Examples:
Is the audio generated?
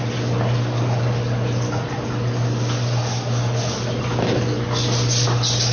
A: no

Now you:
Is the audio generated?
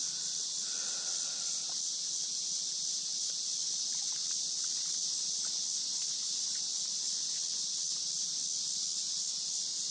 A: no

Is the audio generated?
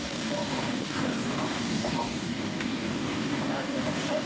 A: yes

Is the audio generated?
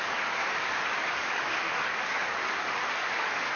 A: yes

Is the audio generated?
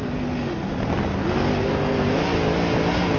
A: no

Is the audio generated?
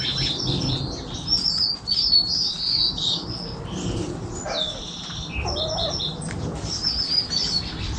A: no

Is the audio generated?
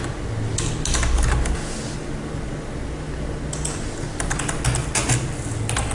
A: no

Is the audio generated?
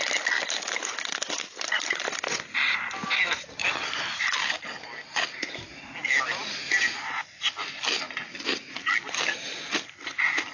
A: no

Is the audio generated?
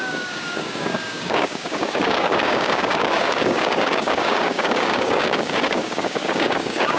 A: yes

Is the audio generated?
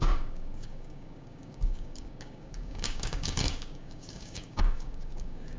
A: yes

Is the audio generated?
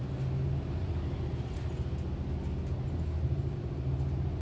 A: no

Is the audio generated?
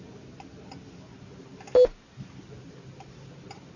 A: no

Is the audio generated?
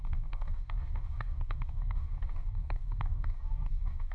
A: yes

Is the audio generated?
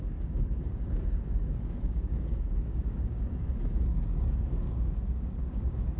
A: yes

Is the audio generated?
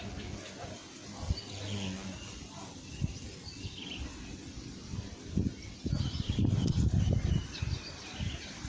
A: no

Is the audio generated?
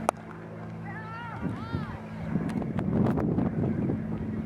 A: no